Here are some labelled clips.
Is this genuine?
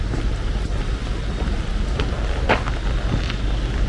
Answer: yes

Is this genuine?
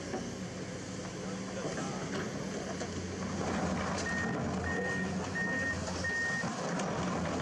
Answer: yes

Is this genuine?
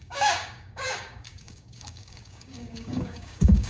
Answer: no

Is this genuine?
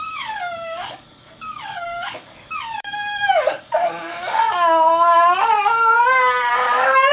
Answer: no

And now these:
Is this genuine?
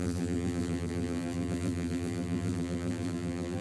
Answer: no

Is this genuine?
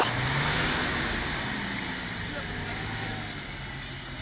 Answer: yes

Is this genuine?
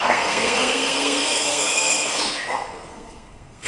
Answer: no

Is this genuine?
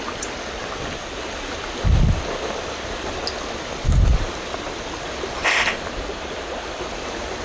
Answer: yes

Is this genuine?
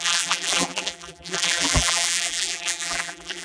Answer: no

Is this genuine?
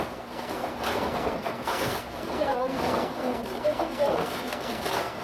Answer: no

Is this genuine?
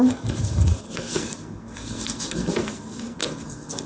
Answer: no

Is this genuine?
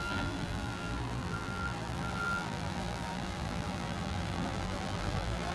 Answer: no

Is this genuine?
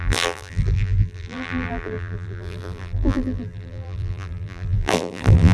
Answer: no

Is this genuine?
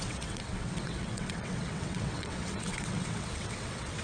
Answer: no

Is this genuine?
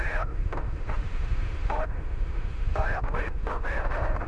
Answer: no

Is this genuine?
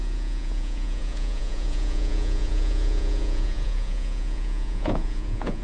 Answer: no